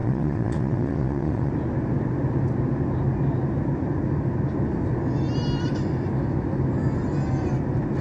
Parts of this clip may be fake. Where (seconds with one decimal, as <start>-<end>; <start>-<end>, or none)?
0.0-1.5